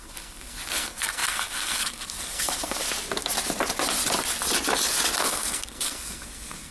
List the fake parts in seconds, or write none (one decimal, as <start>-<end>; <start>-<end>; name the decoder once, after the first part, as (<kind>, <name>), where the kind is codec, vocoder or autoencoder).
0.0-2.8 (codec, SNAC); 5.2-6.7